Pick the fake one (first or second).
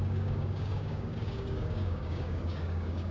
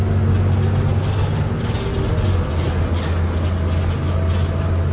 first